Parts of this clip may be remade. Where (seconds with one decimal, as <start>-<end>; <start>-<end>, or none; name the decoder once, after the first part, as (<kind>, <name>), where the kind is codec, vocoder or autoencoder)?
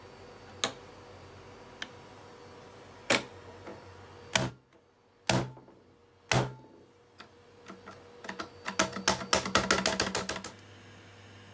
none